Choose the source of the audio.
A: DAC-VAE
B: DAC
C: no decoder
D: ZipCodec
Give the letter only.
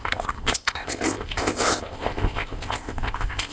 D